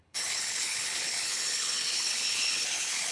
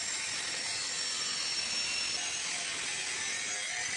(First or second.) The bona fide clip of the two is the second